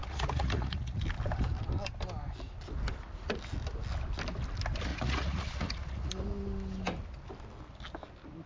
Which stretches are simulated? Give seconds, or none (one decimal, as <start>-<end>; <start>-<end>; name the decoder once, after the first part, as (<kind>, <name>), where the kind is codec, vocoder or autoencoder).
0.0-1.0 (vocoder, Vocos); 4.9-6.1